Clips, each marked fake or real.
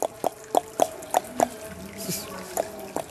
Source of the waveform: real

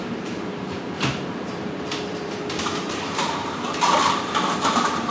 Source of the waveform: fake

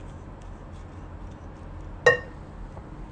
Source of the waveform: real